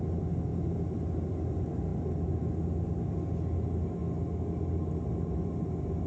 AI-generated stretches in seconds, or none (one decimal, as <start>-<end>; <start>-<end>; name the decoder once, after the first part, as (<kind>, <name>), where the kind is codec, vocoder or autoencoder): 0.5-1.0 (vocoder, BigVGAN v2)